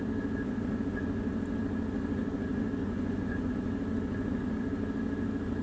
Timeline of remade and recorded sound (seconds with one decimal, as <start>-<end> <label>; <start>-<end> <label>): 0.0-2.8 recorded; 2.8-3.5 remade; 3.5-5.6 recorded